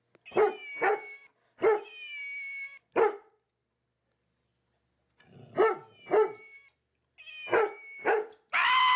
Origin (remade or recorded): recorded